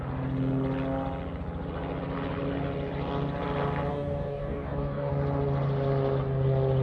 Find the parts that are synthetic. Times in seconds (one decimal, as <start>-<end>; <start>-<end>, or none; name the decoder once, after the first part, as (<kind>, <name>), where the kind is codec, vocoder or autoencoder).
3.9-5.1 (codec, DAC)